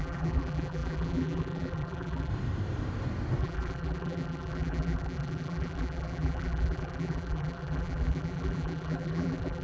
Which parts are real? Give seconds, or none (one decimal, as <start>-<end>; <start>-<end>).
2.3-3.4